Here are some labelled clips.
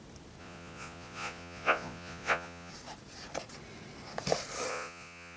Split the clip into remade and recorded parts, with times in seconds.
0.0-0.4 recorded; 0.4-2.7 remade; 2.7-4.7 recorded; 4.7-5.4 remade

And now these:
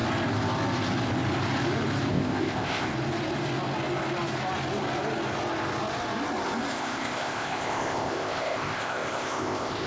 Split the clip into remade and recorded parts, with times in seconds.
0.0-2.1 recorded; 2.1-2.9 remade; 2.9-6.7 recorded; 6.7-9.9 remade

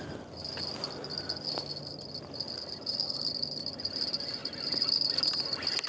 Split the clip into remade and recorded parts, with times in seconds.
0.0-5.9 recorded

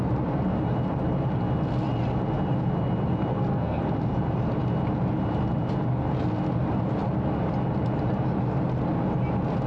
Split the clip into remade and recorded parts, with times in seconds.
0.0-3.3 recorded; 3.3-3.8 remade; 3.8-9.7 recorded

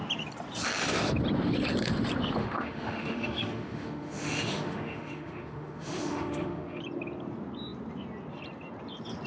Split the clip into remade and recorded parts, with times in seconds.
0.0-2.4 recorded; 2.4-6.8 remade; 6.8-9.3 recorded

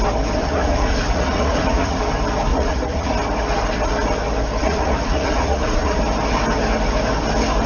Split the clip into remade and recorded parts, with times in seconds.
0.0-0.4 recorded; 0.4-2.0 remade; 2.0-2.5 recorded; 2.5-3.1 remade; 3.1-4.6 recorded; 4.6-6.0 remade; 6.0-7.7 recorded